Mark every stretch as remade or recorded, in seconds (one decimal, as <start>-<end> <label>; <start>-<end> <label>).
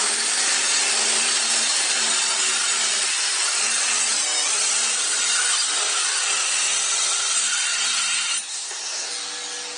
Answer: 0.0-8.5 recorded; 8.5-9.1 remade; 9.1-9.8 recorded